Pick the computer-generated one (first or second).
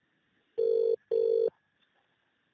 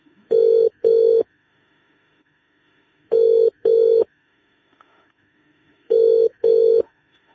second